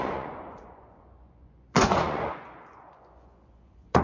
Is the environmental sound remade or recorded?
remade